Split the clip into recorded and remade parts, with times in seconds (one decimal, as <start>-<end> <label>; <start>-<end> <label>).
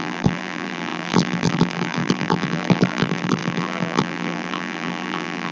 0.0-5.5 remade